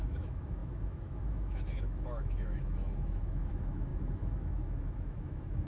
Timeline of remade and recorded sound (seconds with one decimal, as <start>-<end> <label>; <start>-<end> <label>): 0.0-5.7 remade